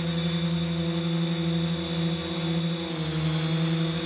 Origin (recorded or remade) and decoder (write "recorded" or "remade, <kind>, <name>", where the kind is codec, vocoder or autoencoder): recorded